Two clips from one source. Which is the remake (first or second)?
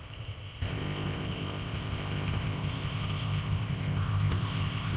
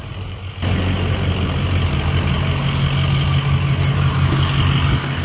first